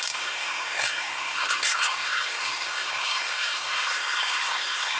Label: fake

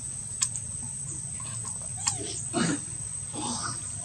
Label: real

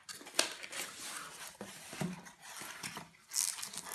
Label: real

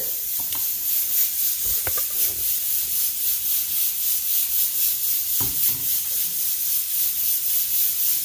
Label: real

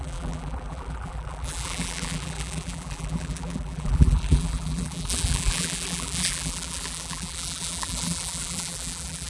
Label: fake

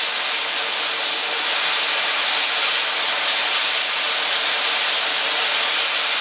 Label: real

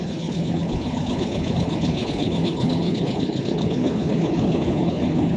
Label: fake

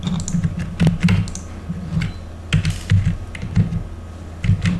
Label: real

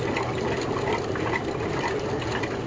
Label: real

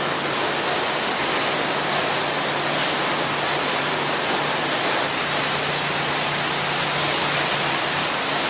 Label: real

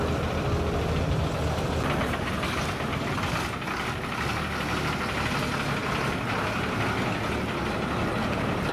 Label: real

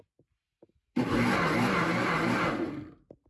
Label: real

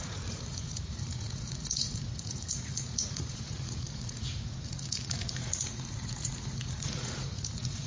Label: fake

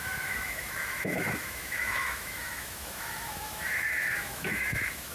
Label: fake